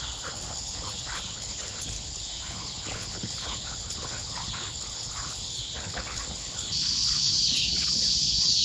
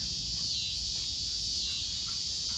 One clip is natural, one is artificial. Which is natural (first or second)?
second